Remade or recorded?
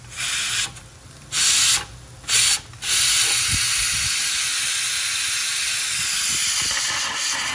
recorded